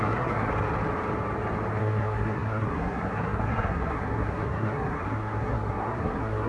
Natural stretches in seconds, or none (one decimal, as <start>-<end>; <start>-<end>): 0.5-1.8